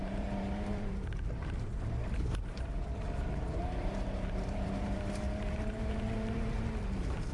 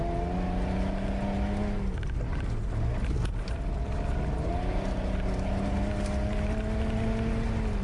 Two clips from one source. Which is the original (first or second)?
second